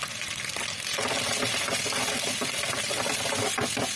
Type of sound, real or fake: real